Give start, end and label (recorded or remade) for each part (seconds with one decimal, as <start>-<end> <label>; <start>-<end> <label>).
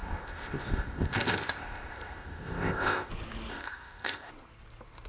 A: 0.0-3.1 remade; 3.1-3.5 recorded; 3.5-4.3 remade; 4.3-5.1 recorded